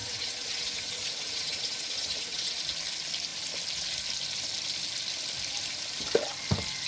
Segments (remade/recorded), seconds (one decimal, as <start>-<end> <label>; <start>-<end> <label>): 0.0-2.6 remade; 2.6-6.9 recorded